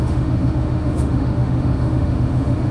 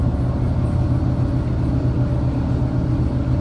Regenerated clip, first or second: first